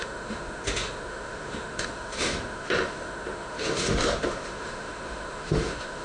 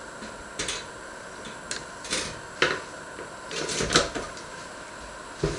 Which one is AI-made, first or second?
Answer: first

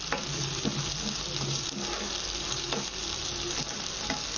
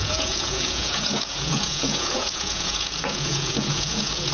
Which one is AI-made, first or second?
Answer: second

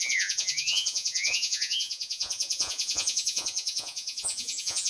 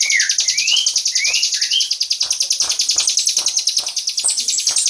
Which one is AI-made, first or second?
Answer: first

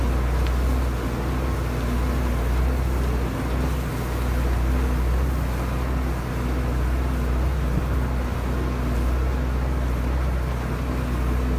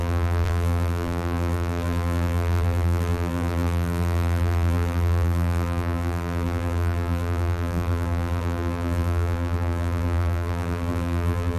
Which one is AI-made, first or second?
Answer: second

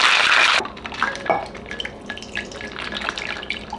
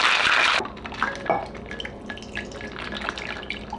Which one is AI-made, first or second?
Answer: first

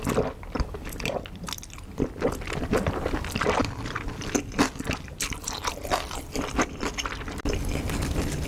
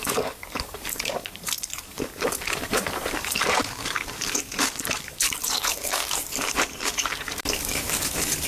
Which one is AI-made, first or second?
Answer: second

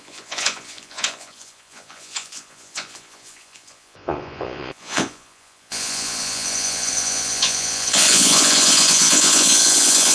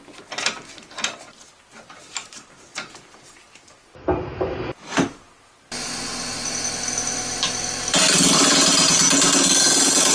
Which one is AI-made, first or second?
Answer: first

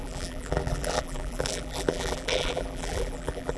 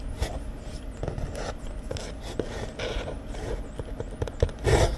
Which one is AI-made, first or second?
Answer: first